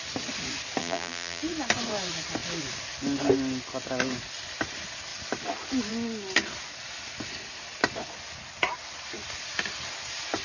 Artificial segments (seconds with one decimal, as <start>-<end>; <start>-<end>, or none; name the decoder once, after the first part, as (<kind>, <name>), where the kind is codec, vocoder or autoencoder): 0.8-1.4 (vocoder, BigVGAN v2)